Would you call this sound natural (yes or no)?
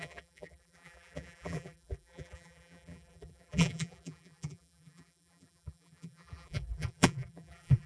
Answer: no